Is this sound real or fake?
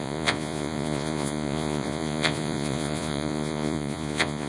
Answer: fake